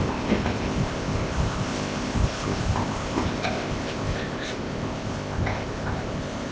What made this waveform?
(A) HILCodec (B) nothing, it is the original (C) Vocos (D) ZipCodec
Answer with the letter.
D